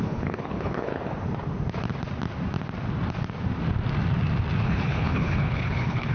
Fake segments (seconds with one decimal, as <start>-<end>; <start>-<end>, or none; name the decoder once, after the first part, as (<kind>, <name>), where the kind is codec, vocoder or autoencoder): 0.0-0.9 (codec, HILCodec); 4.6-6.1